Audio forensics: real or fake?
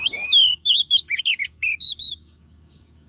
fake